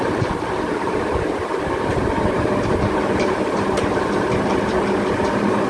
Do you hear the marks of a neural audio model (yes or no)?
yes